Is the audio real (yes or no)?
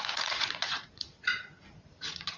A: no